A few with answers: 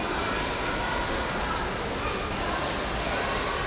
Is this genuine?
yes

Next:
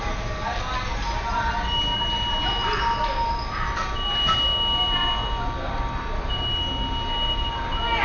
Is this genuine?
yes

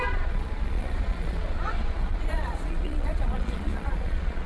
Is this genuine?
no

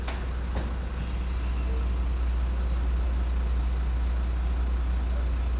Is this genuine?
yes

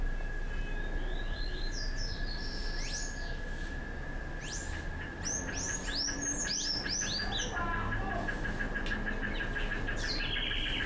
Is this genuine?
yes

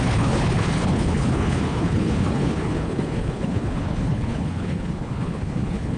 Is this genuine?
no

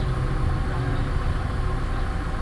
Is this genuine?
yes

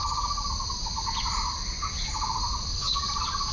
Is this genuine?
yes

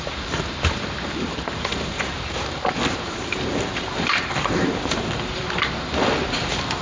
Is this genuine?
no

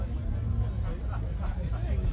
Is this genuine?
yes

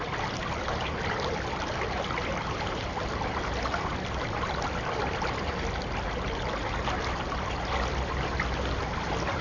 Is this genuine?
yes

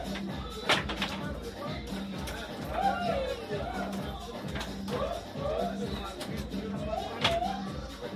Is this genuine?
yes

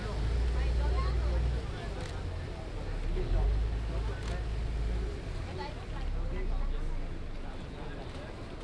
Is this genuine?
yes